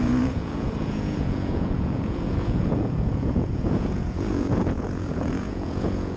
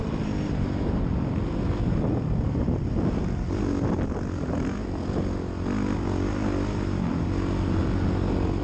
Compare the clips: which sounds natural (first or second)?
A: second